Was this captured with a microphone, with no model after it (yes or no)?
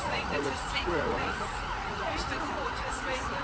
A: no